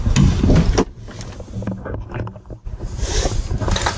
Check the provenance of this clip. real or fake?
real